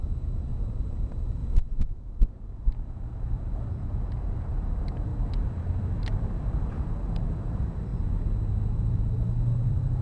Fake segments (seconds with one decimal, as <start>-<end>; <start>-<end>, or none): 0.0-1.4; 3.7-5.1; 6.7-7.9; 8.7-10.0